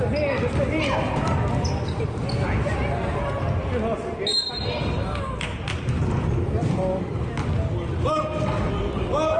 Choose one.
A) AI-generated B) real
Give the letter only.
B